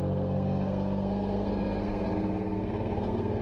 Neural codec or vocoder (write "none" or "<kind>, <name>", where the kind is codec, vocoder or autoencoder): codec, SNAC